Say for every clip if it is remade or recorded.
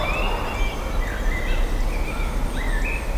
recorded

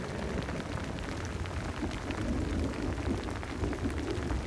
recorded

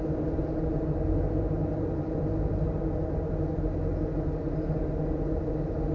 recorded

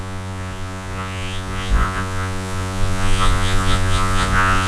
remade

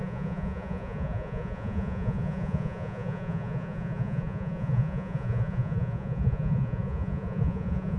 remade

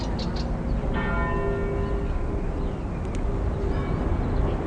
recorded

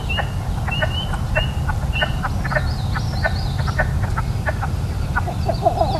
recorded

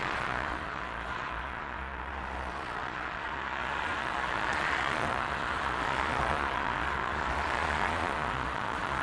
remade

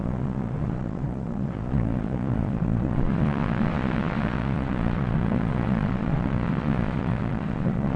remade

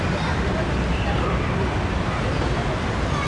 recorded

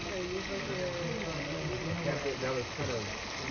recorded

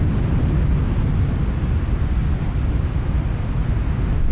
recorded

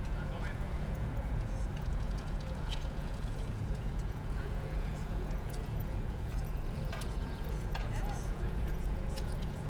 remade